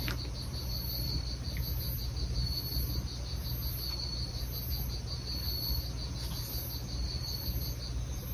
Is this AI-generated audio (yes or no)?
no